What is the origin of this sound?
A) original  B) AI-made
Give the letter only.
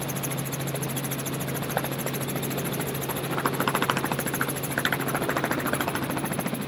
A